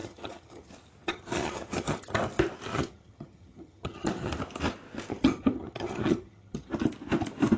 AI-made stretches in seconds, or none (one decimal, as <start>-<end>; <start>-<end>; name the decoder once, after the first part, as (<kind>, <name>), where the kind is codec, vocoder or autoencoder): 0.0-0.7 (vocoder, HiFi-GAN); 1.1-2.1; 2.7-4.3; 5.1-6.7